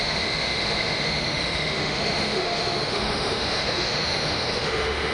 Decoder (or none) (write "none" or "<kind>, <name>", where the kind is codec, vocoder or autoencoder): autoencoder, DAC-VAE